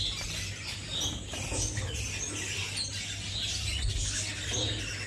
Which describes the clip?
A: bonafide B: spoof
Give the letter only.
A